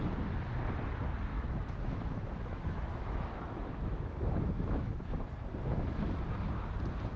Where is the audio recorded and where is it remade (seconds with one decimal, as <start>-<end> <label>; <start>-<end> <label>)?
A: 0.0-1.3 recorded; 1.3-5.3 remade; 5.3-7.2 recorded